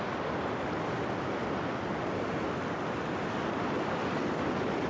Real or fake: real